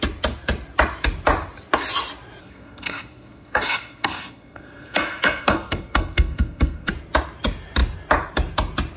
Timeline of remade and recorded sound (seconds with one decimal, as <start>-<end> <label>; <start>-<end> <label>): 0.0-2.4 recorded; 2.4-6.9 remade; 6.9-9.0 recorded